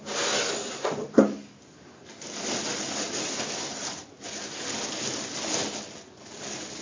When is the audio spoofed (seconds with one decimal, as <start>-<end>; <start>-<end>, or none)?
none